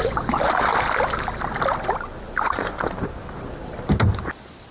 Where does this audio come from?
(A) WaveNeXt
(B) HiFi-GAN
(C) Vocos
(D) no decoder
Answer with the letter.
D